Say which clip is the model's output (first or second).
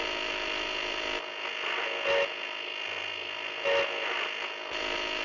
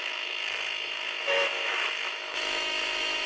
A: second